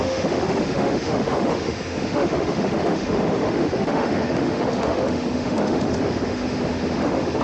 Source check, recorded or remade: remade